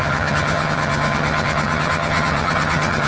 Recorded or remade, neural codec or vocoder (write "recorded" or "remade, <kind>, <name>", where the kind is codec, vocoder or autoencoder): remade, vocoder, HiFi-GAN